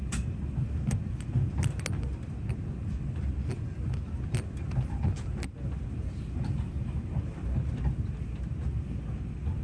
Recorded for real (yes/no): yes